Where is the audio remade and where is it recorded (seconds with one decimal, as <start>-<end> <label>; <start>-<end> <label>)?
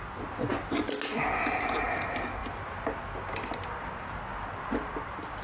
0.0-5.4 recorded